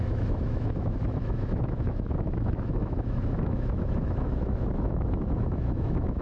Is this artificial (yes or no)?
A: yes